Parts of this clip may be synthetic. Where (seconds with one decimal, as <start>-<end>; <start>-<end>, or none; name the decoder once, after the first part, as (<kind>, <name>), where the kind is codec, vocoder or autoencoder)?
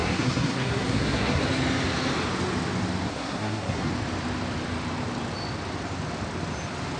0.0-1.4 (codec, SNAC); 3.1-3.9